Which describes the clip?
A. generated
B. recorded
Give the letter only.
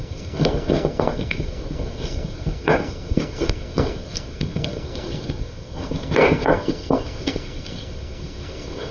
A